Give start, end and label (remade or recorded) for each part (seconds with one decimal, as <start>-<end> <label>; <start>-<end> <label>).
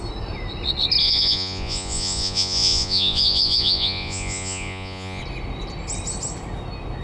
0.0-1.0 recorded; 1.0-5.2 remade; 5.2-7.0 recorded